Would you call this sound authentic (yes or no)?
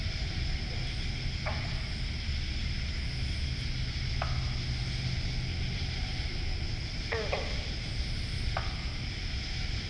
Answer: yes